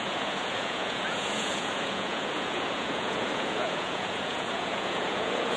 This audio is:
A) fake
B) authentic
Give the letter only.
A